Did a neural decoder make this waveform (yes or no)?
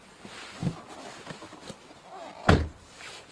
no